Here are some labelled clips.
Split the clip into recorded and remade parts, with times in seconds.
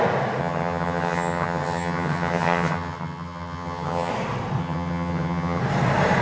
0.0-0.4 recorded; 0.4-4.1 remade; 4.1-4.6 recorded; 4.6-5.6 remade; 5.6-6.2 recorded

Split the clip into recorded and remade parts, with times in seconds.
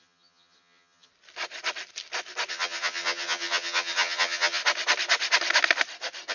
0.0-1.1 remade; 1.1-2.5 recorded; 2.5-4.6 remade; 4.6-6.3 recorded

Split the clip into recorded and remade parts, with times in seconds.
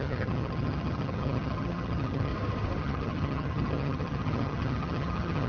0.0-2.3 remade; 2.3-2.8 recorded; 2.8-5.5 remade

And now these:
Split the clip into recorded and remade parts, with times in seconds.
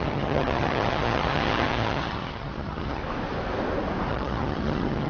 0.0-3.0 remade; 3.0-4.1 recorded; 4.1-5.1 remade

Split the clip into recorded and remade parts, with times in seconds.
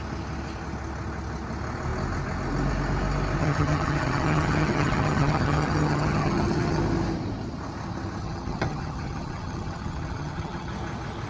0.0-3.4 recorded; 3.4-6.8 remade; 6.8-8.2 recorded; 8.2-10.7 remade; 10.7-11.3 recorded